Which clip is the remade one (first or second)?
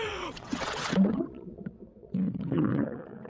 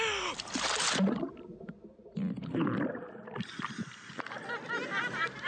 first